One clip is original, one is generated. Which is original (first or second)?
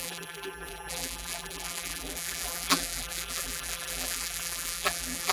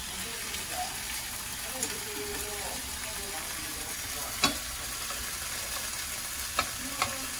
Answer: second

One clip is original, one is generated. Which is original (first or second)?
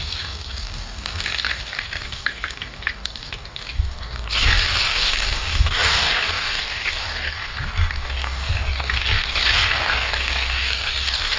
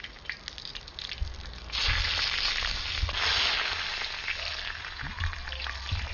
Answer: second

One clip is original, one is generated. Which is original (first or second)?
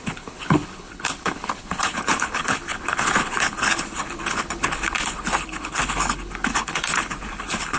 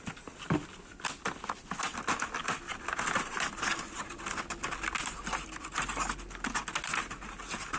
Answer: second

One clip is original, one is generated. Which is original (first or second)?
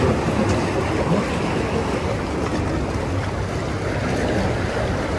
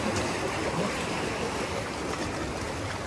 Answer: first